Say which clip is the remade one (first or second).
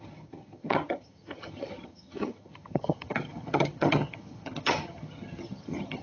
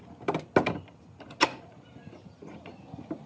first